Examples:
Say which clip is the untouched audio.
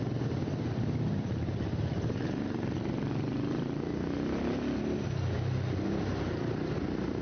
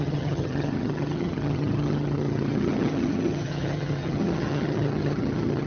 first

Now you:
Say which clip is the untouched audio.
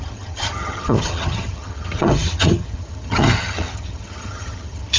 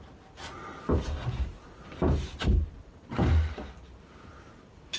second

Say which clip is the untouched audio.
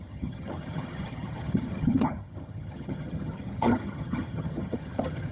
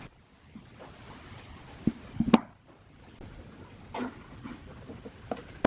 second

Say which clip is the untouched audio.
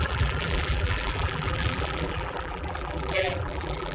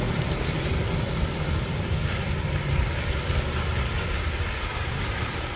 second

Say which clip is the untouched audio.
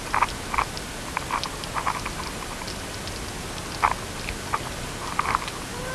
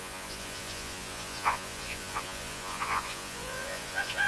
first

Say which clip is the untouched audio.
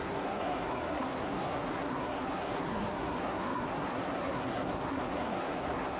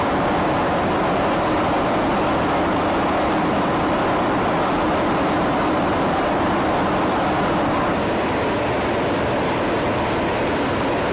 second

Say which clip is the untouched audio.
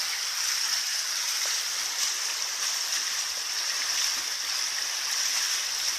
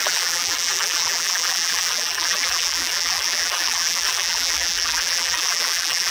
first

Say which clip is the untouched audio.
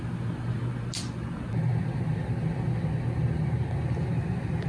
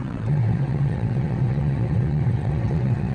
first